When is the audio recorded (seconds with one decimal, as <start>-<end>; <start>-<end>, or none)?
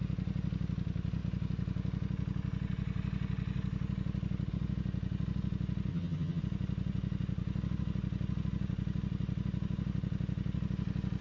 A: 0.0-5.9; 6.4-11.2